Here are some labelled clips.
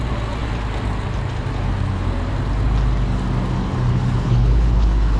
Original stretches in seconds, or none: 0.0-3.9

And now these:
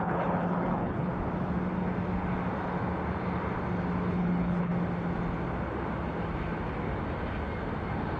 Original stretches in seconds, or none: 1.1-4.1; 4.7-8.2

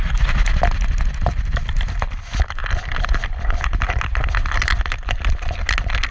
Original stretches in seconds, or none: 0.0-6.1

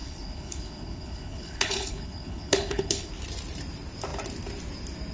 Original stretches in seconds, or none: 3.1-5.1

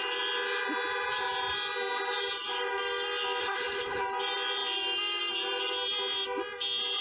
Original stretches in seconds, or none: 0.0-3.4; 4.0-7.0

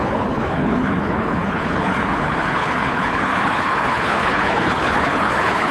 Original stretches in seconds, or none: none

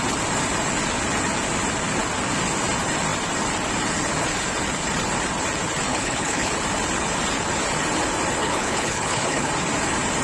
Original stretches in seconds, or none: 0.0-5.9; 6.5-8.4; 9.5-10.2

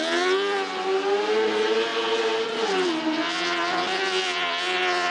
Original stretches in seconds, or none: 0.0-5.1